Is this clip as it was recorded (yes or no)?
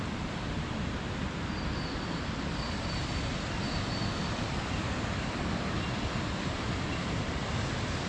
yes